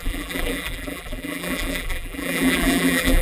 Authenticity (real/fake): fake